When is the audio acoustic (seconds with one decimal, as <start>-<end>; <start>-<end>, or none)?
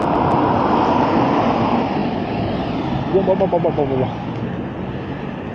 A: 0.0-5.5